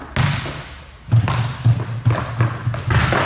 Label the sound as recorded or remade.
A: recorded